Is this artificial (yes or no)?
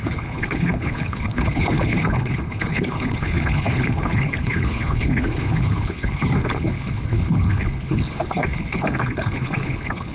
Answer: yes